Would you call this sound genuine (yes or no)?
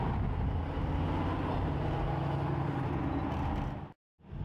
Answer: yes